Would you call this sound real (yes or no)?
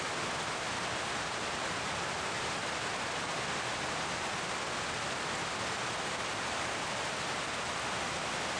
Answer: yes